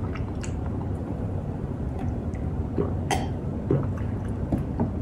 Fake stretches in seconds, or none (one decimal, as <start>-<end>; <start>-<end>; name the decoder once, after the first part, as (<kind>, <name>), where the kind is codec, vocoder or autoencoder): 1.0-2.3 (vocoder, BigVGAN v2)